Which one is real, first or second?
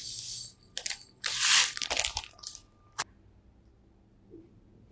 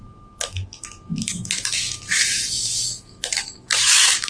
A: first